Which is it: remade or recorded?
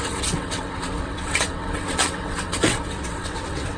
remade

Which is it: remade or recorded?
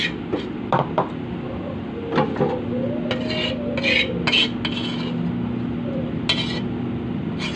recorded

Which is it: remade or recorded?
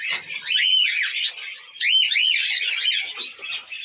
recorded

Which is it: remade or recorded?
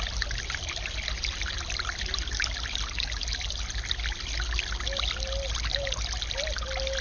recorded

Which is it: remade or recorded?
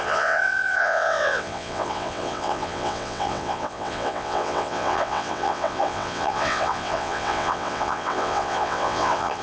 remade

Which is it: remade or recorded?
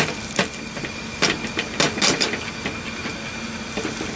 recorded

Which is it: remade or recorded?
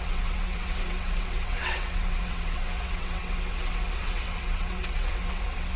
remade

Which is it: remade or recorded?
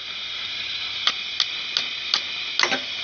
recorded